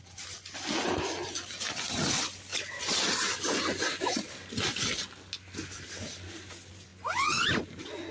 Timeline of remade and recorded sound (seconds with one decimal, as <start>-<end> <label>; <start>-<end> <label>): 0.0-2.5 recorded; 2.5-3.3 remade; 3.3-8.1 recorded